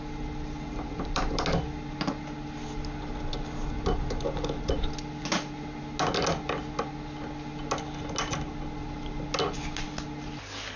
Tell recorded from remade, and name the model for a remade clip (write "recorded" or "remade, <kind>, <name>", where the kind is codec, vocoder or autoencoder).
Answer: recorded